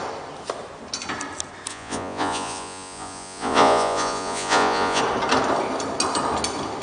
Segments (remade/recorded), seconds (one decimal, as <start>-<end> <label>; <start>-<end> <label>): 0.0-1.7 recorded; 1.7-5.0 remade; 5.0-6.8 recorded